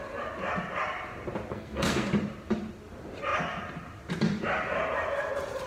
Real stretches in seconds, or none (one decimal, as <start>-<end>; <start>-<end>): 0.0-1.5; 2.1-5.7